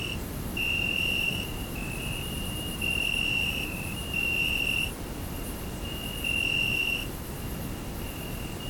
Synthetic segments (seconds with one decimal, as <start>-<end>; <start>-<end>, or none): 0.5-4.5; 6.8-7.4